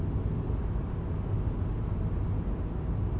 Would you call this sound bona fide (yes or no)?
yes